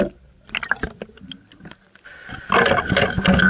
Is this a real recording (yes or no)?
yes